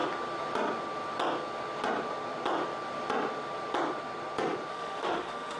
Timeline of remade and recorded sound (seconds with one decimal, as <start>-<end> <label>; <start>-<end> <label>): 0.0-4.7 recorded; 4.7-5.6 remade